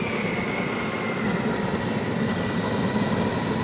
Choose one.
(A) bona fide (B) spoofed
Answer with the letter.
A